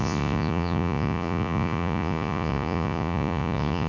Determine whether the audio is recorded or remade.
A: remade